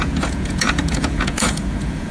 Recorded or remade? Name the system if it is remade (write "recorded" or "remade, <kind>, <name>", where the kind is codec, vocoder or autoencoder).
remade, vocoder, Vocos